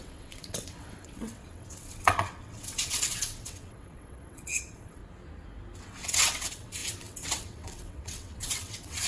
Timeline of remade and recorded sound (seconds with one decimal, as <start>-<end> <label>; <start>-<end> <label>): 0.0-5.0 remade; 5.0-5.8 recorded; 5.8-9.1 remade